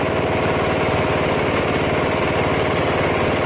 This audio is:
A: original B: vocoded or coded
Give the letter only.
A